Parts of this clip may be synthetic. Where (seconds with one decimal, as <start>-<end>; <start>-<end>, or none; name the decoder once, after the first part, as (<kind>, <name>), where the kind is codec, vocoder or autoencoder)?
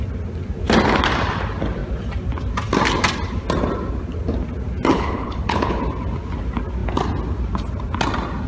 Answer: 4.9-5.8 (codec, HILCodec)